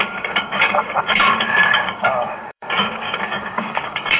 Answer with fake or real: fake